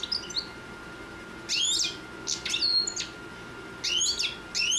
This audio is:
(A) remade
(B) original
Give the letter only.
B